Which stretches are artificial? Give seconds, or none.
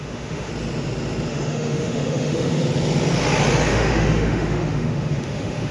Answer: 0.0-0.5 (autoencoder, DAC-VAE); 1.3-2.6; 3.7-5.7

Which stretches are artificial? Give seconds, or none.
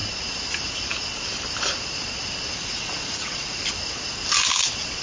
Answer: 2.5-3.6 (vocoder, Vocos)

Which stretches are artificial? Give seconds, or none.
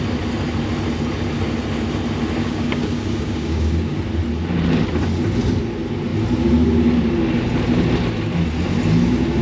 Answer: 2.4-4.0 (codec, DAC)